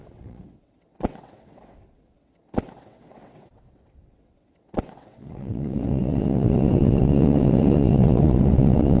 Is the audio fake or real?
fake